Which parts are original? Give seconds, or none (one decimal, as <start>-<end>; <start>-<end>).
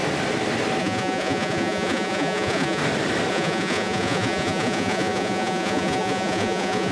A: 0.0-0.8; 2.8-3.3